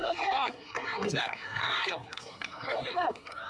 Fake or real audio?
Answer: fake